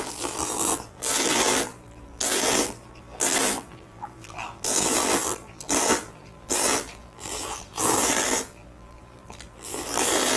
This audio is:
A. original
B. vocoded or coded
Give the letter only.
B